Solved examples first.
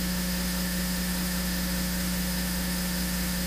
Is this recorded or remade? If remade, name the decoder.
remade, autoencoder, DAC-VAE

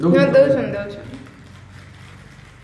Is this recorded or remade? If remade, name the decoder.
recorded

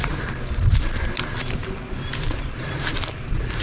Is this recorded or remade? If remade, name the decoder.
recorded